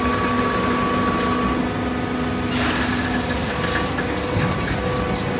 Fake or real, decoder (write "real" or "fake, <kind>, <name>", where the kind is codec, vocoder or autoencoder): real